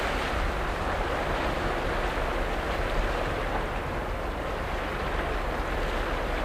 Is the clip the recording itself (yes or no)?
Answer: yes